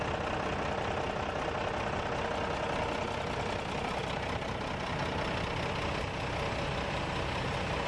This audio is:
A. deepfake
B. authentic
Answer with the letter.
B